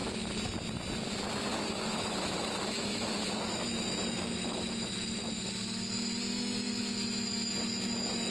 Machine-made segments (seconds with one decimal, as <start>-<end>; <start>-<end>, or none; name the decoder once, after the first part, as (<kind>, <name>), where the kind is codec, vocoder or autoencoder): 1.5-5.5 (autoencoder, DAC-VAE); 6.3-8.3

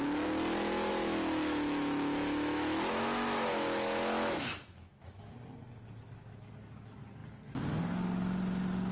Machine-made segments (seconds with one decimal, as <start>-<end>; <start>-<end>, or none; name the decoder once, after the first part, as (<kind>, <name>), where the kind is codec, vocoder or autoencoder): 0.9-5.3 (autoencoder, DAC-VAE)

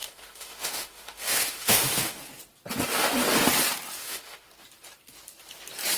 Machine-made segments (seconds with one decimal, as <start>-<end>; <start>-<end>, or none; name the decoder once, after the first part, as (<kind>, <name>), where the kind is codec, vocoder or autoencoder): 0.0-2.2 (autoencoder, DAC-VAE); 4.0-4.5

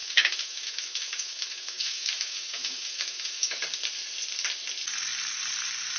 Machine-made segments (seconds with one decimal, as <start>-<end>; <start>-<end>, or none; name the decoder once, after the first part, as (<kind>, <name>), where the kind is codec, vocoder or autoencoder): 0.0-3.6 (autoencoder, DAC-VAE)